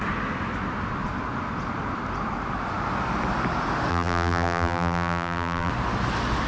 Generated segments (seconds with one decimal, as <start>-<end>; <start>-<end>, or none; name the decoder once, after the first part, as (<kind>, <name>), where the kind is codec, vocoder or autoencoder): 3.9-5.7 (vocoder, BigVGAN v2)